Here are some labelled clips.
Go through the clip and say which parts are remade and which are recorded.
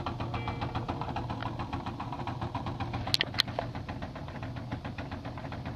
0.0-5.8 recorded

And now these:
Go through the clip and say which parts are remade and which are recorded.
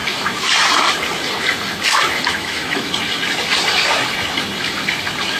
0.0-2.3 recorded; 2.3-2.9 remade; 2.9-5.4 recorded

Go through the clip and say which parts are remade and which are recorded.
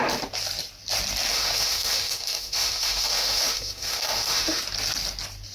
0.0-1.3 recorded; 1.3-4.6 remade; 4.6-5.5 recorded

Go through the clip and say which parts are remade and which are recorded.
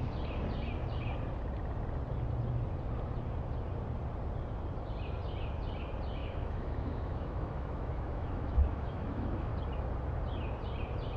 0.0-6.2 recorded; 6.2-9.5 remade; 9.5-11.2 recorded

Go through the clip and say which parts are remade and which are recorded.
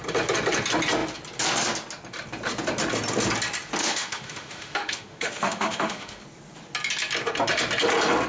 0.0-3.8 recorded; 3.8-6.2 remade; 6.2-8.3 recorded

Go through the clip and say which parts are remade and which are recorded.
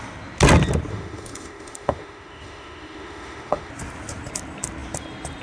0.0-0.9 recorded; 0.9-3.7 remade; 3.7-5.4 recorded